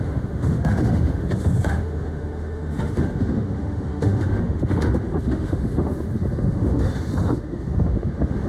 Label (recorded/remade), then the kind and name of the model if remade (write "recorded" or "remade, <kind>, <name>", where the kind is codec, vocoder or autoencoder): remade, autoencoder, DAC-VAE